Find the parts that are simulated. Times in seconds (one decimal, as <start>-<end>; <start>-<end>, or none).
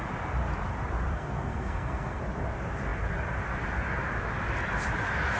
1.1-2.2